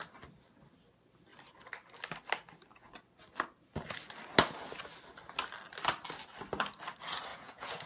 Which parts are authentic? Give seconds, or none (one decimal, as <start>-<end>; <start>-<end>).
0.0-7.3